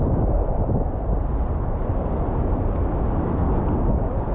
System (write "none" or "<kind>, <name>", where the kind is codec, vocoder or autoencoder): none